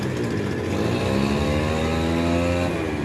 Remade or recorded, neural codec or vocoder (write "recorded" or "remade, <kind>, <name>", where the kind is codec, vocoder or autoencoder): recorded